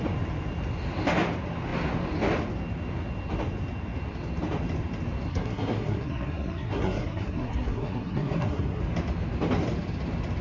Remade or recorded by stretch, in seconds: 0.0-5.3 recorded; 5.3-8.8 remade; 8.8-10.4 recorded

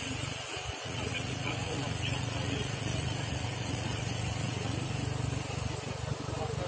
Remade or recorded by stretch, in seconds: 0.0-4.9 remade; 4.9-6.7 recorded

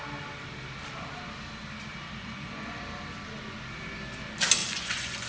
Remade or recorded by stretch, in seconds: 0.0-2.2 recorded; 2.2-2.8 remade; 2.8-4.6 recorded; 4.6-5.3 remade

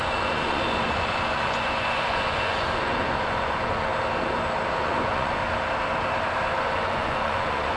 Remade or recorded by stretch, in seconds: 0.0-3.9 remade; 3.9-4.7 recorded; 4.7-5.4 remade; 5.4-6.6 recorded; 6.6-7.8 remade

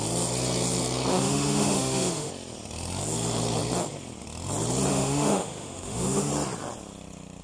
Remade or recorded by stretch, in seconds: 0.0-1.1 recorded; 1.1-2.3 remade; 2.3-4.9 recorded; 4.9-6.3 remade; 6.3-7.4 recorded

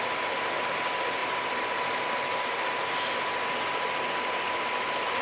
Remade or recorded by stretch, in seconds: 0.0-5.2 recorded

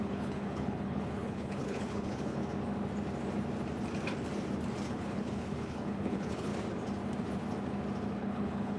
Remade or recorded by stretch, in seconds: 0.0-2.4 remade; 2.4-4.9 recorded; 4.9-6.5 remade; 6.5-8.2 recorded; 8.2-8.8 remade